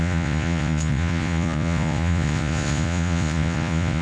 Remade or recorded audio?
remade